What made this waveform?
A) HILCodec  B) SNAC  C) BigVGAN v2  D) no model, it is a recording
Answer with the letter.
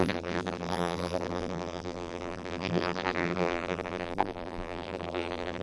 C